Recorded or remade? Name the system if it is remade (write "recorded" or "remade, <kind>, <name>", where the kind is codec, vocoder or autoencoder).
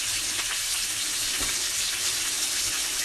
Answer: remade, vocoder, BigVGAN v2